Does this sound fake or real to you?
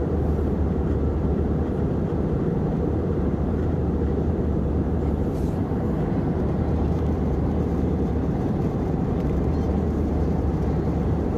fake